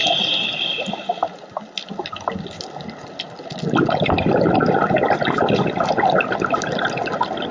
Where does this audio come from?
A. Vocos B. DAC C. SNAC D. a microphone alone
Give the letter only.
D